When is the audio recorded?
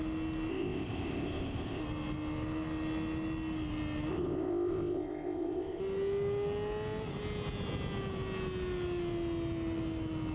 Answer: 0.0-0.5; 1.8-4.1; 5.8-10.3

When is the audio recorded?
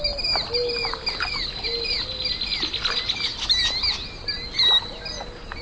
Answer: 0.0-5.6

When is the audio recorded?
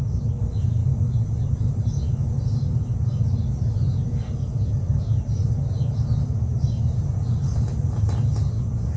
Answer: 0.0-9.0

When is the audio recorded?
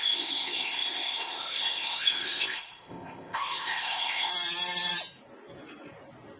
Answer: 4.3-6.4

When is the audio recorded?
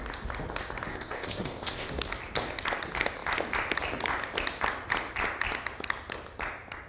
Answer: 0.0-0.9; 1.9-6.9